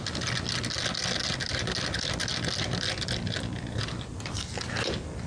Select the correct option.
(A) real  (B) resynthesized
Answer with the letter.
A